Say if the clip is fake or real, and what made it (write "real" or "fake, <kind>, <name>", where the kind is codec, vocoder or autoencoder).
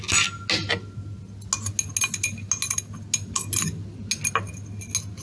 real